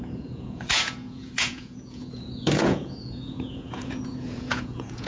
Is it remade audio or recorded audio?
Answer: remade